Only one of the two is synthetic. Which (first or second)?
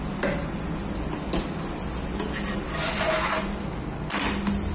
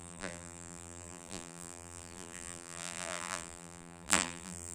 second